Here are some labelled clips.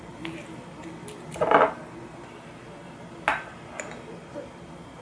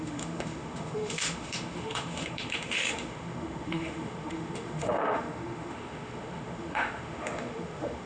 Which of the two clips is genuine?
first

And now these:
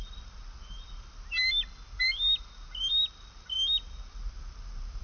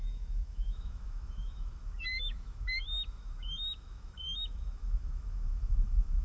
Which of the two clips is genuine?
first